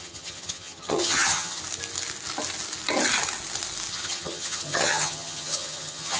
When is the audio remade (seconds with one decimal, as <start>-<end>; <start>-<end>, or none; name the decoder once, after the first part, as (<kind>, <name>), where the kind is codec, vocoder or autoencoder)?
0.0-1.6 (vocoder, HiFi-GAN); 3.9-6.2